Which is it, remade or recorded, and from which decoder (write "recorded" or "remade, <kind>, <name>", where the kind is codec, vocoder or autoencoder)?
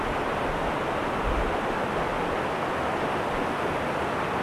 recorded